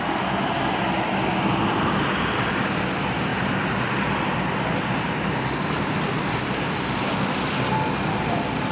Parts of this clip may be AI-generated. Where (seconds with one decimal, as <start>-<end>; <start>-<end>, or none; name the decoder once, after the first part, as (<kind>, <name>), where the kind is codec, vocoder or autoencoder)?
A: none